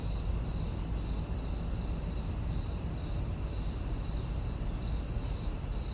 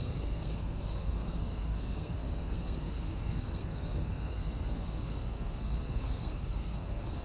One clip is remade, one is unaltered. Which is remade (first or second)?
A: second